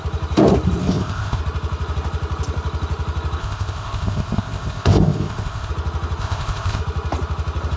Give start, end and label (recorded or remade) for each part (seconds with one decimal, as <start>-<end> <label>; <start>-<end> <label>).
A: 0.0-0.8 recorded; 0.8-1.4 remade; 1.4-3.4 recorded; 3.4-5.7 remade; 5.7-6.2 recorded; 6.2-6.8 remade; 6.8-7.8 recorded